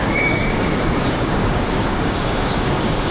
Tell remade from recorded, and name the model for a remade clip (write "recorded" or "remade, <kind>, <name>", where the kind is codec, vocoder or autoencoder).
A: remade, codec, DAC